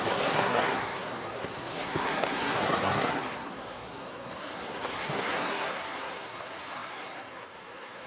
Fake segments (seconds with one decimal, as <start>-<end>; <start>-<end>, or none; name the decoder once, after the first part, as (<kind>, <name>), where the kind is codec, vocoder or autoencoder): 0.0-8.1 (codec, SNAC)